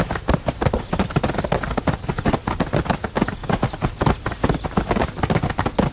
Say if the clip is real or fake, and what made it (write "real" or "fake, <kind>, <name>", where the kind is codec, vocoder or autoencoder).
real